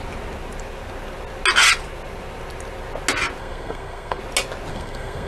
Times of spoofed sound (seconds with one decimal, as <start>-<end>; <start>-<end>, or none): 3.4-4.2; 4.7-5.3